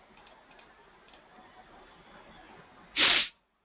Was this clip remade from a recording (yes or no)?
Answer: no